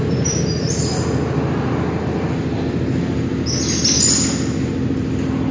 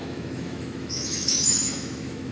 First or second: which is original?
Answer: first